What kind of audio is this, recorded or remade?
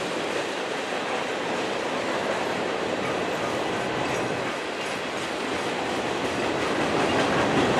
recorded